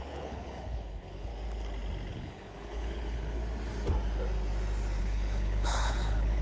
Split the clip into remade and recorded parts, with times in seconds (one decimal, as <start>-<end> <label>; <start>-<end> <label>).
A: 0.0-1.3 remade; 1.3-2.1 recorded; 2.1-3.4 remade; 3.4-5.0 recorded; 5.0-6.4 remade